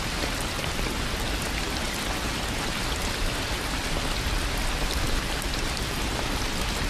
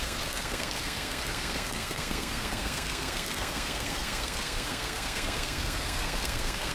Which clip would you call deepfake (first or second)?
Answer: second